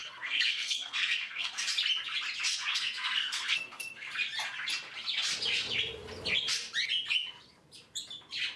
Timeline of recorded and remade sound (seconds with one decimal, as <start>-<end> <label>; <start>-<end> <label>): 0.0-1.5 remade; 1.5-2.7 recorded; 2.7-4.1 remade; 4.1-8.6 recorded